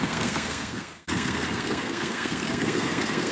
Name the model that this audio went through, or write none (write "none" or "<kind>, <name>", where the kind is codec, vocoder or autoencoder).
codec, SNAC